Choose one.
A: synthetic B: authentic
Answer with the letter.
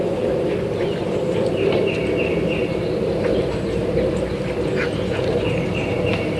A